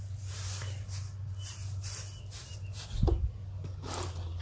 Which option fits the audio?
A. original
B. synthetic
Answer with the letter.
A